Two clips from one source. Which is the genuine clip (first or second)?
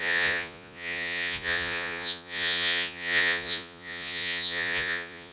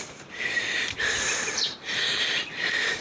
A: second